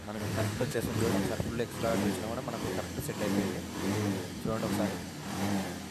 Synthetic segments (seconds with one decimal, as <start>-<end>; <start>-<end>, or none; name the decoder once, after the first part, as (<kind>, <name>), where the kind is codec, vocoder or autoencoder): 0.0-0.8 (autoencoder, DAC-VAE)